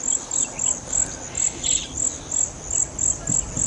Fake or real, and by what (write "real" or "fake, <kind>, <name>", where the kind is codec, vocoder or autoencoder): real